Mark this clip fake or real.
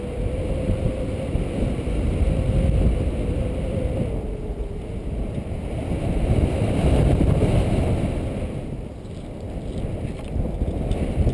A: real